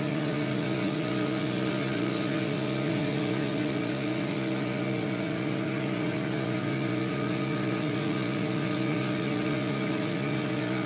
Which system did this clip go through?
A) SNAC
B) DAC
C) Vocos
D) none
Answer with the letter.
C